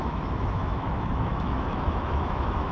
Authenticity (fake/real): fake